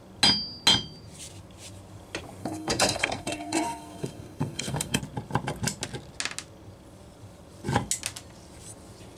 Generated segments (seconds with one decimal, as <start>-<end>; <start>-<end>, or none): 2.4-5.0